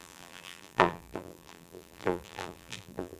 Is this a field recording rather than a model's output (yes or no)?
no